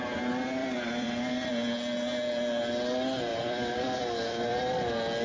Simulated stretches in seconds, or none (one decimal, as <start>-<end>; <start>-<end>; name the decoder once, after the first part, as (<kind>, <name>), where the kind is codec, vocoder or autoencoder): 0.6-1.5 (vocoder, BigVGAN v2); 3.3-4.6